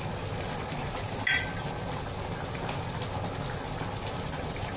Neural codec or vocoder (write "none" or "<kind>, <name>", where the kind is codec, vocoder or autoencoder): none